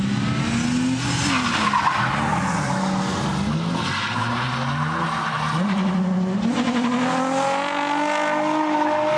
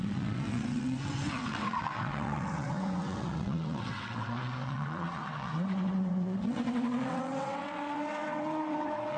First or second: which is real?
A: first